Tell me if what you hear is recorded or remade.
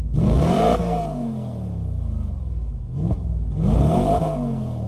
remade